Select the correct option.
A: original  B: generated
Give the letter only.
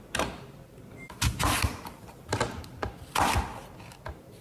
A